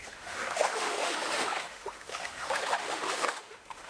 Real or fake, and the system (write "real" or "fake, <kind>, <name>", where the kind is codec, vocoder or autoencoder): fake, autoencoder, DAC-VAE